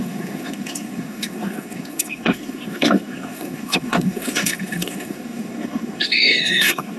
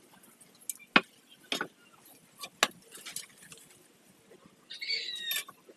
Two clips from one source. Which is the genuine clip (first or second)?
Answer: second